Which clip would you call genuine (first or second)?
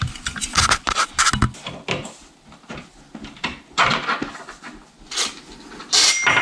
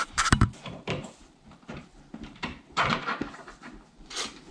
first